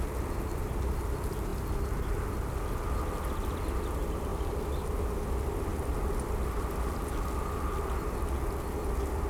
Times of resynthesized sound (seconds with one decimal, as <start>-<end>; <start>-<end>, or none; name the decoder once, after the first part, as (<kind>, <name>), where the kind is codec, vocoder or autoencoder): none